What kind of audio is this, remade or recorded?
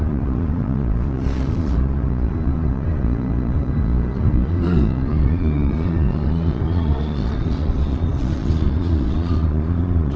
remade